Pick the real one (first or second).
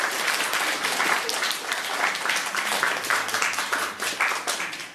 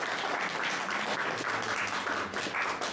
second